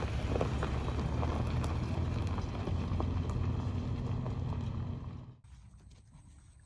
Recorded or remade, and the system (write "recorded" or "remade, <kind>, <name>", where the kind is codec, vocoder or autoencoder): recorded